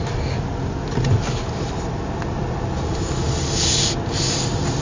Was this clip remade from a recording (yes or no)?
no